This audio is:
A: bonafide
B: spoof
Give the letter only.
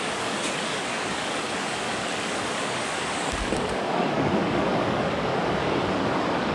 B